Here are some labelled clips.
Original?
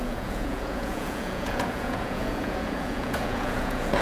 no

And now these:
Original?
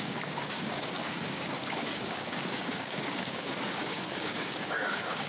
no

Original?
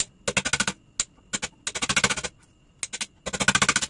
yes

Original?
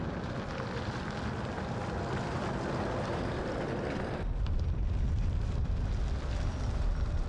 yes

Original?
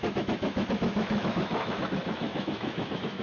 no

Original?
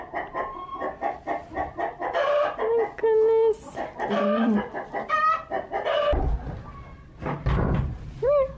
yes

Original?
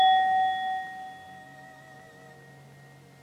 yes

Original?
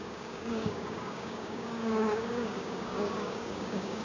no